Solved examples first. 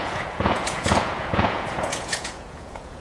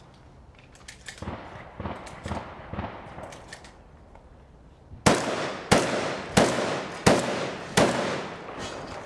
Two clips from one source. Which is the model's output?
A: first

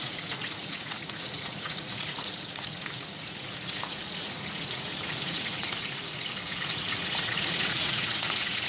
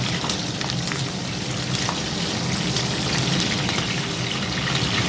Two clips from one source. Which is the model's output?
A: first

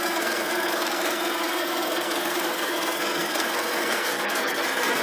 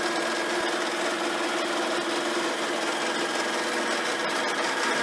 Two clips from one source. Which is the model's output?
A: first